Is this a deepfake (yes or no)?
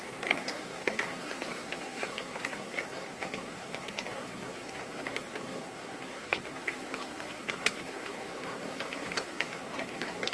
yes